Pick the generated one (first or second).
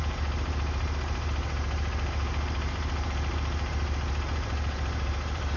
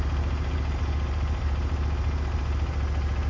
first